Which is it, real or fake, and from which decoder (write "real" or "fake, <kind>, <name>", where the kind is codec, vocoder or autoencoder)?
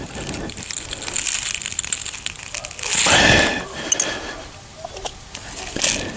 real